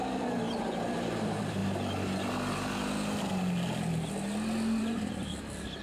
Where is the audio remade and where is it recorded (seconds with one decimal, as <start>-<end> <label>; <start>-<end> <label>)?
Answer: 0.0-1.6 remade; 1.6-4.8 recorded; 4.8-5.8 remade